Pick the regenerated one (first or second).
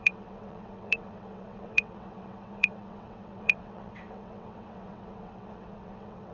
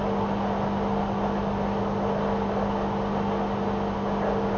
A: first